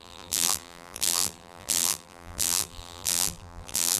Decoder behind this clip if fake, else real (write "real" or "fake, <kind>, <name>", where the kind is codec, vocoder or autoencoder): fake, vocoder, BigVGAN v2